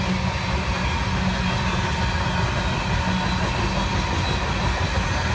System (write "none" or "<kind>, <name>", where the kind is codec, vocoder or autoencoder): none